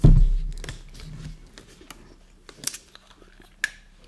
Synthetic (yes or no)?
no